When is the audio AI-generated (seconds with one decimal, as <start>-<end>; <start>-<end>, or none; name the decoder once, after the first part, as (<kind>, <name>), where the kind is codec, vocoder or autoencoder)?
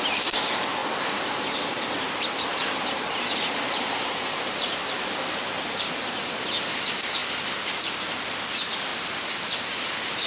0.0-0.8 (vocoder, BigVGAN v2); 5.8-7.2; 8.2-10.3